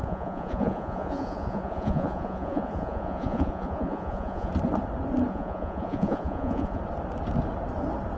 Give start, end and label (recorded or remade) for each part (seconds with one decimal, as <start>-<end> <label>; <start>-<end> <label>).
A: 0.0-4.5 remade; 4.5-5.3 recorded; 5.3-6.8 remade; 6.8-8.2 recorded

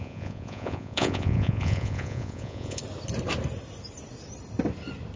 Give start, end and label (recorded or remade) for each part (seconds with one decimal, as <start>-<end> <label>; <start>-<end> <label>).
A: 0.0-2.8 remade; 2.8-5.2 recorded

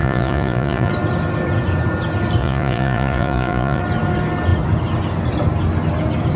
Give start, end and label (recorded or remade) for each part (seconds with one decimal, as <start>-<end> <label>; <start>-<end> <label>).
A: 0.0-0.9 remade; 0.9-2.4 recorded; 2.4-3.8 remade; 3.8-6.4 recorded

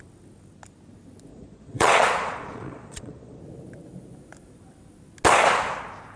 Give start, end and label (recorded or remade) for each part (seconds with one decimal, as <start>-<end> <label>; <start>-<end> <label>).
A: 0.0-1.3 recorded; 1.3-3.4 remade; 3.4-6.2 recorded

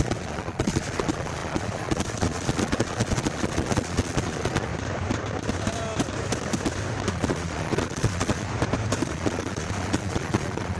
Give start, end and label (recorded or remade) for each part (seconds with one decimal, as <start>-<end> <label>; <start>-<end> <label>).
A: 0.0-4.7 remade; 4.7-7.1 recorded; 7.1-8.5 remade; 8.5-9.1 recorded; 9.1-10.8 remade

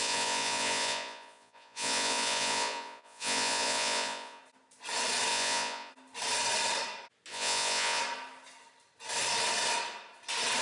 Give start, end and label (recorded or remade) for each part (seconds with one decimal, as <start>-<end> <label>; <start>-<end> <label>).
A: 0.0-4.4 remade; 4.4-5.3 recorded; 5.3-5.9 remade; 5.9-7.3 recorded; 7.3-8.0 remade; 8.0-10.6 recorded

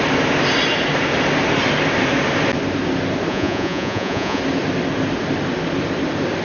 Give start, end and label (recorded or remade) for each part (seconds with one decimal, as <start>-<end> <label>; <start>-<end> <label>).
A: 0.0-3.3 recorded; 3.3-4.4 remade; 4.4-6.4 recorded